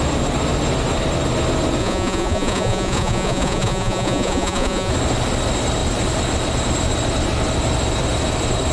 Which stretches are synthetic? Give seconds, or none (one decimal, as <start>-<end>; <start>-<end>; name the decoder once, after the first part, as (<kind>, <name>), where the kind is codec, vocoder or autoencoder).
1.8-4.9 (vocoder, Vocos)